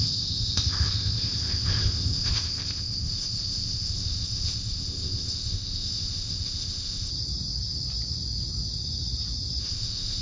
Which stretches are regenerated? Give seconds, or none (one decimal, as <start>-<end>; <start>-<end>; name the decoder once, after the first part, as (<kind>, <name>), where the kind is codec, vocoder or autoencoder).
0.0-7.1 (codec, ZipCodec); 9.6-10.2